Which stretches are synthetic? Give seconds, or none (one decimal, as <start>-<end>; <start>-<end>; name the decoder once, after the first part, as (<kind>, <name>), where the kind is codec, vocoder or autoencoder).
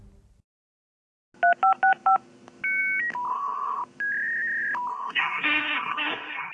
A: 3.3-3.8 (codec, SNAC); 4.9-6.5